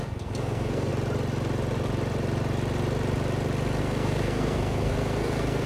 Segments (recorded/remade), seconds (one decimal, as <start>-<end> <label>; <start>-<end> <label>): 0.0-0.9 remade; 0.9-3.8 recorded; 3.8-5.7 remade